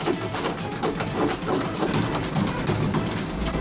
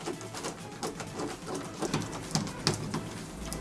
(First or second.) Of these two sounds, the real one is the second